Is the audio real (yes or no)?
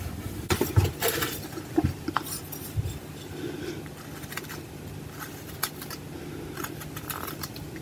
yes